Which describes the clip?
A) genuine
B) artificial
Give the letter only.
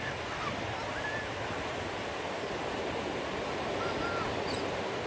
A